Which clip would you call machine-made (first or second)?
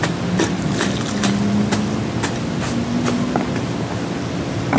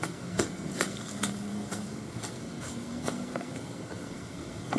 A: second